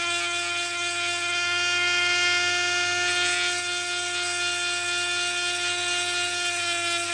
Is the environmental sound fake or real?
real